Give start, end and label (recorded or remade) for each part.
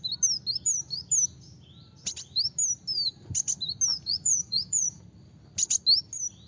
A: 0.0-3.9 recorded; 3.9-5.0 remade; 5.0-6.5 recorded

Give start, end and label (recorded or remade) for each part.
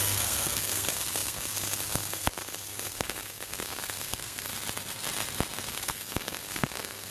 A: 0.0-4.5 remade; 4.5-5.7 recorded; 5.7-7.1 remade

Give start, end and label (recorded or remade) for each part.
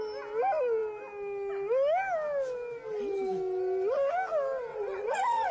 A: 0.0-4.7 recorded; 4.7-5.5 remade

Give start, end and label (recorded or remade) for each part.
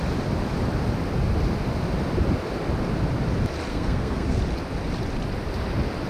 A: 0.0-3.7 recorded; 3.7-4.4 remade; 4.4-6.1 recorded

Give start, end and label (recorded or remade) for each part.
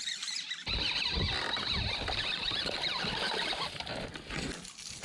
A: 0.0-5.0 recorded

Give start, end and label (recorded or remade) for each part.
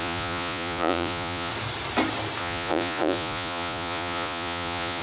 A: 0.0-1.5 remade; 1.5-2.4 recorded; 2.4-5.0 remade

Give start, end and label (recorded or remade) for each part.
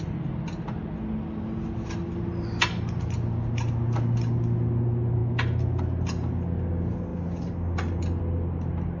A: 0.0-9.0 recorded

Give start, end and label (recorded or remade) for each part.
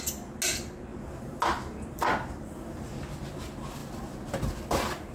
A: 0.0-5.1 recorded